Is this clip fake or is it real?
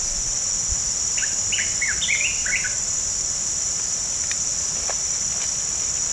real